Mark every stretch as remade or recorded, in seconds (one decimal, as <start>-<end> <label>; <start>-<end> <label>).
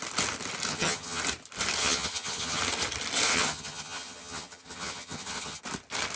0.0-0.7 recorded; 0.7-1.2 remade; 1.2-1.8 recorded; 1.8-2.6 remade; 2.6-3.3 recorded; 3.3-5.6 remade; 5.6-6.2 recorded